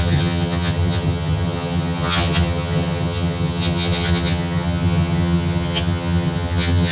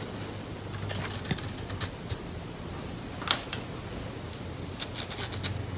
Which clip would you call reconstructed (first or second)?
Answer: first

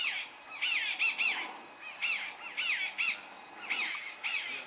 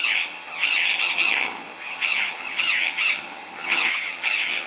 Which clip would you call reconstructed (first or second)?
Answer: second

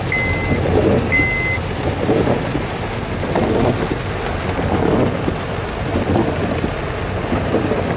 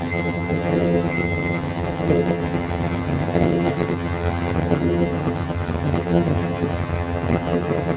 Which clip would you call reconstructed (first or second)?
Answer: second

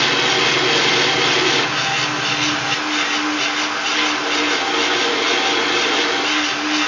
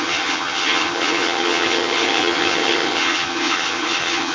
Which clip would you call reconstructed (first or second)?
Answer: second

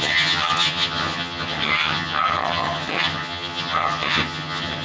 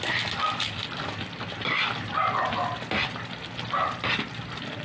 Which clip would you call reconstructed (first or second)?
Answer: first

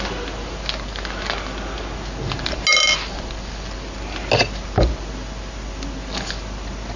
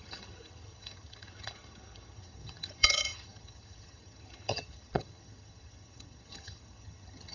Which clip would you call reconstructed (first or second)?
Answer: second